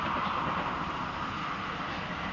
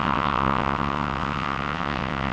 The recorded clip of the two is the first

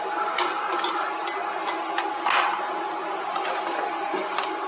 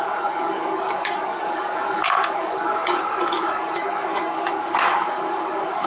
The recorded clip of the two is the first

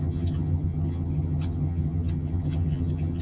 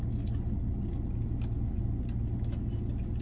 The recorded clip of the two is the second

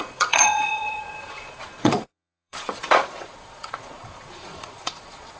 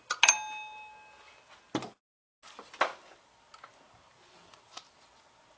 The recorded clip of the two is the second